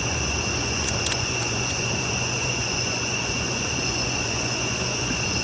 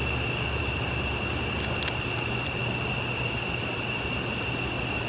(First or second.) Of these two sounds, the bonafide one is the second